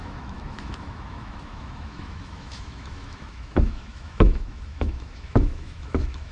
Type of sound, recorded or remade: remade